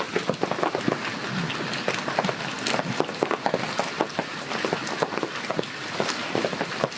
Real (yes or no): yes